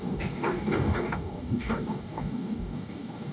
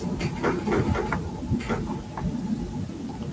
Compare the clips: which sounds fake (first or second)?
first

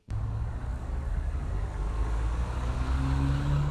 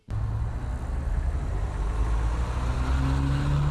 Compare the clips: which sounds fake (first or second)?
first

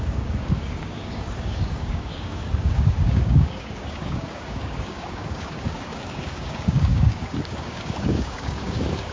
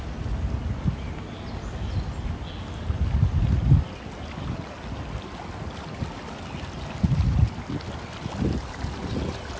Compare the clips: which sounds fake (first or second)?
first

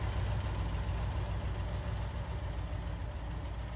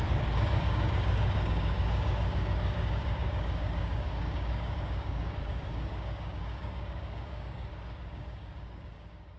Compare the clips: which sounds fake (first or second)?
second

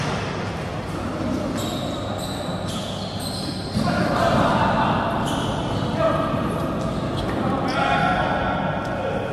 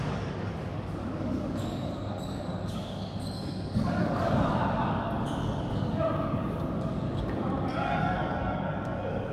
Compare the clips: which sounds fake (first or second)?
second